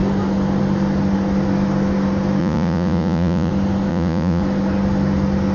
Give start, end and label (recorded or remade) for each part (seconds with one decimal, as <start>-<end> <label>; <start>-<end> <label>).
0.0-2.4 recorded; 2.4-3.5 remade; 3.5-3.9 recorded; 3.9-4.4 remade; 4.4-5.5 recorded